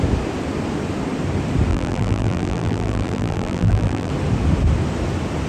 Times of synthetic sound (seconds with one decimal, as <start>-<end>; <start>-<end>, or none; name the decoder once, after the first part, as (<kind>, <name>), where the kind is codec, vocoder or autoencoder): 1.7-4.1 (vocoder, BigVGAN v2)